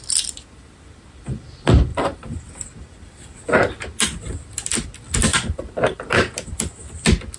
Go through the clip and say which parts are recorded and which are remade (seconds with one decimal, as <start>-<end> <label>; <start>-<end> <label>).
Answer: 0.0-1.9 recorded; 1.9-2.5 remade; 2.5-5.3 recorded; 5.3-6.0 remade; 6.0-7.4 recorded